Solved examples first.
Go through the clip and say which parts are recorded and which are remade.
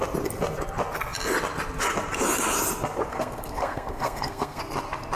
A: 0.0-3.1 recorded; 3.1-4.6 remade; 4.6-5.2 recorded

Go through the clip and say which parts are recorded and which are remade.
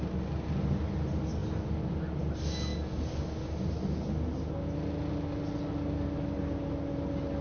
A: 0.0-7.4 recorded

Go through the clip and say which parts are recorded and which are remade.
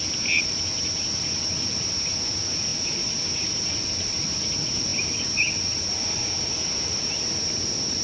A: 0.0-8.0 recorded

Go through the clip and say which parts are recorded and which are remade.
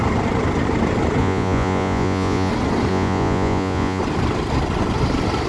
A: 0.0-1.2 recorded; 1.2-2.5 remade; 2.5-2.9 recorded; 2.9-4.0 remade; 4.0-5.5 recorded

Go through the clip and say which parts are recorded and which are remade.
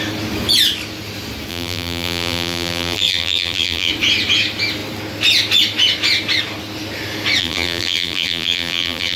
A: 0.0-1.5 recorded; 1.5-3.9 remade; 3.9-7.4 recorded; 7.4-9.2 remade